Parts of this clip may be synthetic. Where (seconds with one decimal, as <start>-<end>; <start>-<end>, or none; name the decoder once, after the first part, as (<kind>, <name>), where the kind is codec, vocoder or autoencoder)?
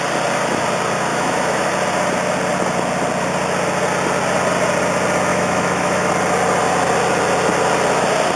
1.1-1.7 (autoencoder, DAC-VAE); 5.3-6.1